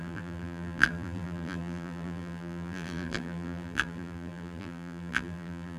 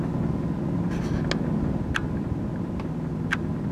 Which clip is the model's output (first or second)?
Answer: first